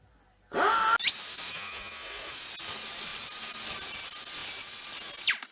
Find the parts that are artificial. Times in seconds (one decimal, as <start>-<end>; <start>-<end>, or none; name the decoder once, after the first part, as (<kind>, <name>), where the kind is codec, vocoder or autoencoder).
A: 1.3-2.4 (autoencoder, DAC-VAE)